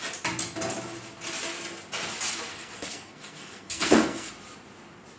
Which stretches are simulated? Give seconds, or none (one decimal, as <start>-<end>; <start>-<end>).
2.5-4.3